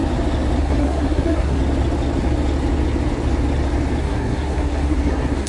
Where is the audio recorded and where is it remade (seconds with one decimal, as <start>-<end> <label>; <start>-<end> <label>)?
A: 0.0-0.6 recorded; 0.6-1.6 remade; 1.6-4.0 recorded; 4.0-5.5 remade